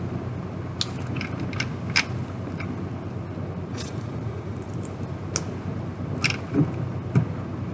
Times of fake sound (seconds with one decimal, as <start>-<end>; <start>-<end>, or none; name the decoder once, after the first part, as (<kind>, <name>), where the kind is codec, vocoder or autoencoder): 3.7-4.7 (vocoder, Vocos)